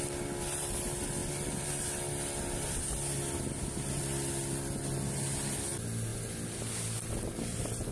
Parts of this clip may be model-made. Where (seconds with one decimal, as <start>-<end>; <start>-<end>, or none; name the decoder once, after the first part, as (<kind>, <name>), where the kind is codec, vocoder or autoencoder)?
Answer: none